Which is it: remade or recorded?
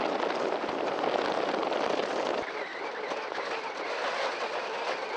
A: recorded